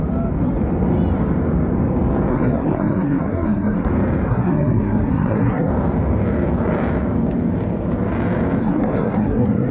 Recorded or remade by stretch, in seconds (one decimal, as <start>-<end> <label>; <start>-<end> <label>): 0.0-2.3 recorded; 2.3-3.9 remade; 3.9-4.3 recorded; 4.3-5.7 remade; 5.7-8.6 recorded; 8.6-9.7 remade